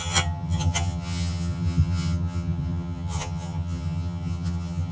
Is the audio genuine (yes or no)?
no